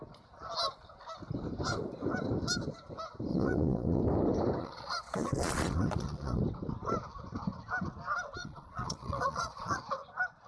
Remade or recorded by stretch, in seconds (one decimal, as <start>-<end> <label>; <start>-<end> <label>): 0.0-3.3 recorded; 3.3-4.0 remade; 4.0-4.6 recorded; 4.6-6.4 remade; 6.4-8.4 recorded; 8.4-9.8 remade; 9.8-10.5 recorded